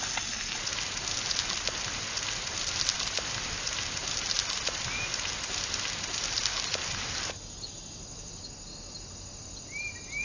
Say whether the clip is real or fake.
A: real